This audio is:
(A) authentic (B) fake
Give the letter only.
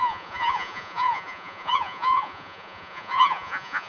B